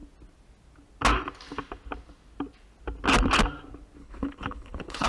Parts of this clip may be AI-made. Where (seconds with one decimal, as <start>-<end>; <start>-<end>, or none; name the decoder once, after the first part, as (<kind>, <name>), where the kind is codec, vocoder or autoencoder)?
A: 4.0-5.1 (codec, HILCodec)